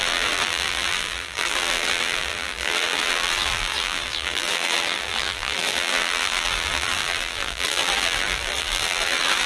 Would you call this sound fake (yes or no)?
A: yes